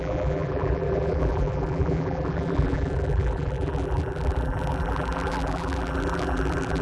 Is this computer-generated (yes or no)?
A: yes